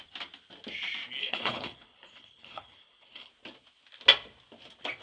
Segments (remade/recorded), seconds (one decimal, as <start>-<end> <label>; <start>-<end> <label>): 0.0-1.2 recorded; 1.2-3.3 remade; 3.3-5.0 recorded